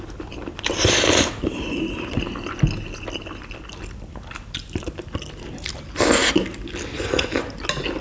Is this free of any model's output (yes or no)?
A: yes